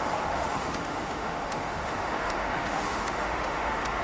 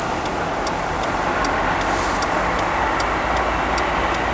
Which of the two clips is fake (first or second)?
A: first